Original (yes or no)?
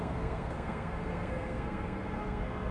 no